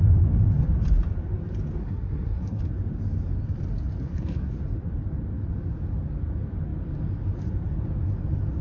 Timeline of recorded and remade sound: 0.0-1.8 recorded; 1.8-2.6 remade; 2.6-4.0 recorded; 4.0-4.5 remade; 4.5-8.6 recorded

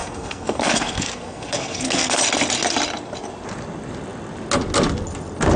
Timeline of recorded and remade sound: 0.0-2.2 remade; 2.2-5.6 recorded

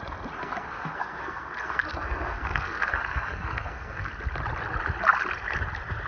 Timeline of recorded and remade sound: 0.0-0.4 recorded; 0.4-4.1 remade; 4.1-6.1 recorded

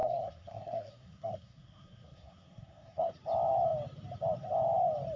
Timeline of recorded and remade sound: 0.0-3.1 remade; 3.1-5.2 recorded